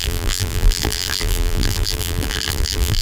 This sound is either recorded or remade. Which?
remade